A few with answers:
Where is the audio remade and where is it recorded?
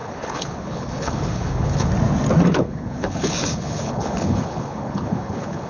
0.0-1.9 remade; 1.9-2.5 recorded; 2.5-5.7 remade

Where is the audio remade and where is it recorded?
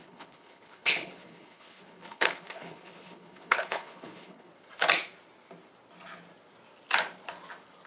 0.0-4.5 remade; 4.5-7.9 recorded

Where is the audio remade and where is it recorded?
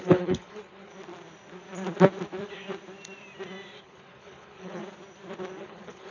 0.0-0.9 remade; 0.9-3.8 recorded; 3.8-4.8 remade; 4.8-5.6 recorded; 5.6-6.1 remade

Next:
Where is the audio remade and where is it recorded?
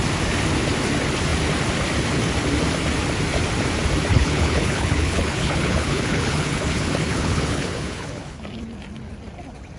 0.0-4.1 recorded; 4.1-8.4 remade; 8.4-9.8 recorded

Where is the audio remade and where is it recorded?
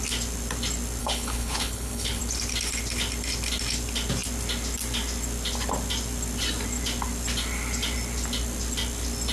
0.0-1.0 recorded; 1.0-2.2 remade; 2.2-9.3 recorded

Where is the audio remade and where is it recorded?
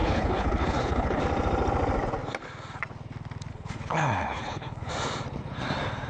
0.0-1.2 remade; 1.2-3.5 recorded; 3.5-4.9 remade; 4.9-6.1 recorded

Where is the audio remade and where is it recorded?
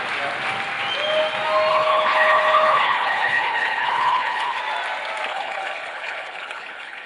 0.0-1.7 recorded; 1.7-4.6 remade; 4.6-5.3 recorded; 5.3-7.1 remade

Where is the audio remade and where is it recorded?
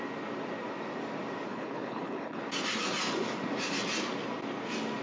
0.0-1.5 recorded; 1.5-2.4 remade; 2.4-5.0 recorded